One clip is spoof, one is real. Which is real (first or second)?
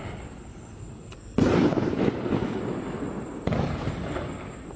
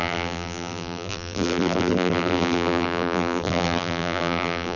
first